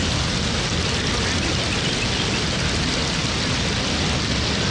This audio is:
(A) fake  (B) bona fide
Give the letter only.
B